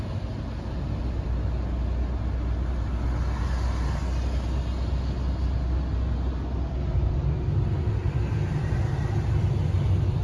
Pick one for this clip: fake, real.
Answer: real